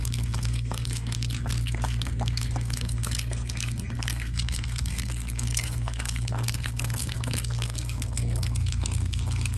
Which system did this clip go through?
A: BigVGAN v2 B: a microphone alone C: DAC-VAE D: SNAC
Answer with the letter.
D